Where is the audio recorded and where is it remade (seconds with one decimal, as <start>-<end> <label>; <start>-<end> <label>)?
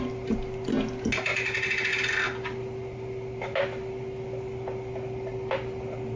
0.0-6.2 recorded